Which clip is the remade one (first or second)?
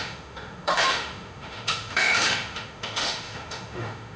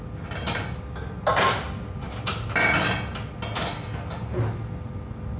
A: first